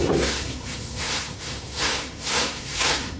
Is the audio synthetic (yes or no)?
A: yes